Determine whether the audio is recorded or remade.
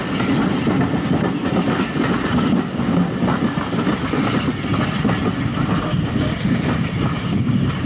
recorded